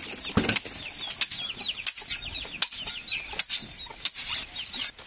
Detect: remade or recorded recorded